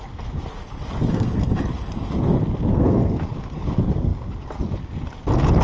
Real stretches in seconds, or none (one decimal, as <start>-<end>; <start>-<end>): 0.0-1.1; 1.6-2.7; 3.2-5.6